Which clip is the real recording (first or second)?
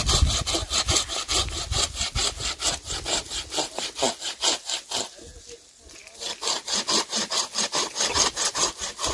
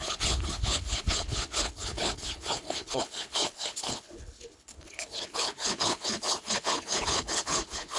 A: first